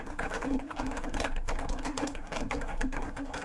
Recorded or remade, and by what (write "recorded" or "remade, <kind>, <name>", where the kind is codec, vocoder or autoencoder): remade, codec, SNAC